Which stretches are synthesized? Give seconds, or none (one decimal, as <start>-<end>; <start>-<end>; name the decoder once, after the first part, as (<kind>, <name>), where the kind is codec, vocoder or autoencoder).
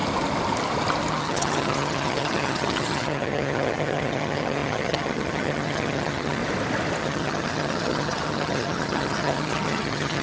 1.1-6.4 (vocoder, HiFi-GAN); 7.0-10.2